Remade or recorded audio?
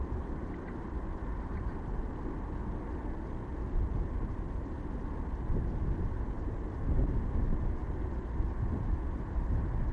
recorded